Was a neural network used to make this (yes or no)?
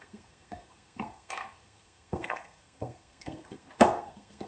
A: yes